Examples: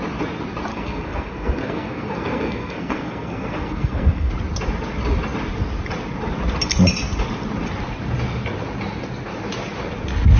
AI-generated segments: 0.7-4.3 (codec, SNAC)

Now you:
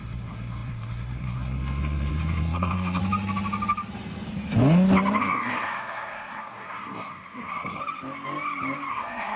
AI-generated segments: 0.0-3.0 (codec, SNAC); 5.2-7.8; 8.9-9.4